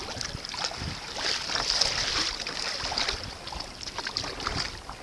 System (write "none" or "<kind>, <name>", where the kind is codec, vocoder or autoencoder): none